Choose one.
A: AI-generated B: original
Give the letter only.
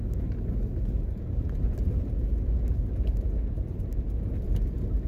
B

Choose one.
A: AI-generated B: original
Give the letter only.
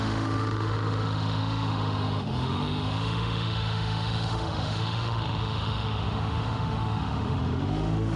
A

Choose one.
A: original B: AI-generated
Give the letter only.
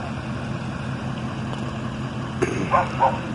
A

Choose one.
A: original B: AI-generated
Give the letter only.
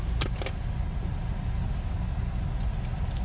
A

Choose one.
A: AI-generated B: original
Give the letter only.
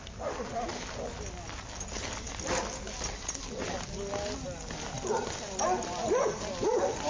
B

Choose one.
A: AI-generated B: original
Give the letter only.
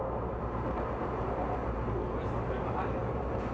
B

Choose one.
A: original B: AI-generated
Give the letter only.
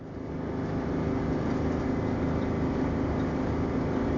A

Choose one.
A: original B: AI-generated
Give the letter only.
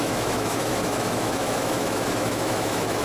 B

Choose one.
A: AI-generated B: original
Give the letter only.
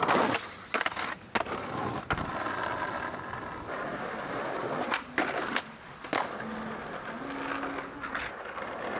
B